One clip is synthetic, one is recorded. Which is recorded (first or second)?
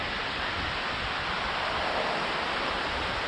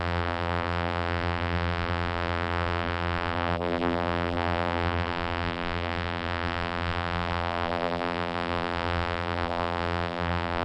first